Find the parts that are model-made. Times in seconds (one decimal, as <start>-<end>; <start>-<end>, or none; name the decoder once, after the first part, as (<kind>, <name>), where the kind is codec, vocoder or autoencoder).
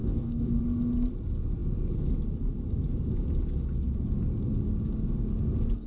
0.0-0.6 (codec, DAC)